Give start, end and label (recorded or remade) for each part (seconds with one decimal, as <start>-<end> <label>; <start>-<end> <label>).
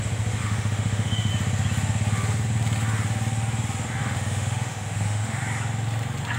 0.0-0.4 recorded; 0.4-1.3 remade; 1.3-4.0 recorded; 4.0-5.4 remade; 5.4-6.4 recorded